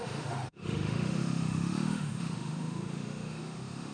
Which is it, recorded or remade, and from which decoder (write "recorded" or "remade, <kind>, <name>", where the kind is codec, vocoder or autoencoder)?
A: remade, autoencoder, DAC-VAE